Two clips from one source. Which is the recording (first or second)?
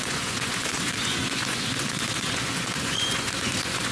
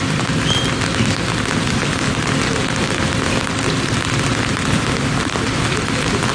second